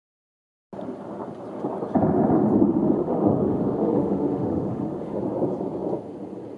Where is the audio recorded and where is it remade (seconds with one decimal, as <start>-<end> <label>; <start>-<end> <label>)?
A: 0.0-2.6 recorded; 2.6-5.2 remade; 5.2-6.6 recorded